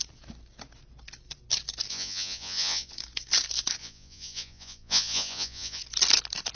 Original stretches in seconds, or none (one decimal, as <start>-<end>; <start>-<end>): 0.0-1.9; 2.9-3.8; 5.8-6.6